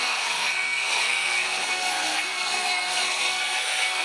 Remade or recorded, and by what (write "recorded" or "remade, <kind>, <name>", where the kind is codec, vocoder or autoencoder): remade, codec, SNAC